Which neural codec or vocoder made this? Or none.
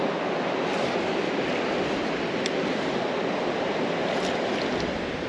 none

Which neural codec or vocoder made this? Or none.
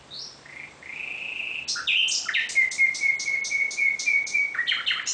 none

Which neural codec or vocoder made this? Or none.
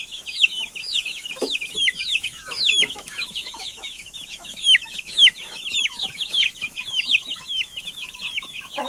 autoencoder, DAC-VAE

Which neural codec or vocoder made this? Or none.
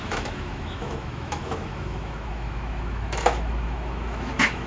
autoencoder, DAC-VAE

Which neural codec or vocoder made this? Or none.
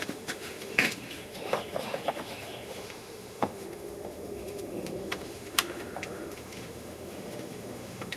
autoencoder, DAC-VAE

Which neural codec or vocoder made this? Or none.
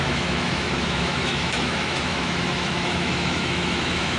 autoencoder, DAC-VAE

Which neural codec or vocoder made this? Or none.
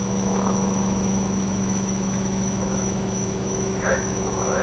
autoencoder, DAC-VAE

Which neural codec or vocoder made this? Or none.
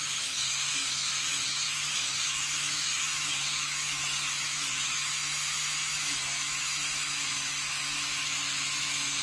autoencoder, DAC-VAE